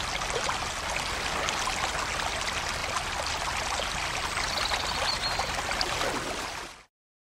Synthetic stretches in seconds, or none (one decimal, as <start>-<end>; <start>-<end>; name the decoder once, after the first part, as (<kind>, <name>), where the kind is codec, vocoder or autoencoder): none